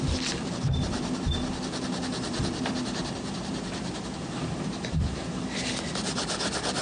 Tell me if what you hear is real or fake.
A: real